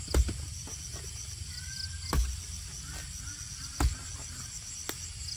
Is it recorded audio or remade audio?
recorded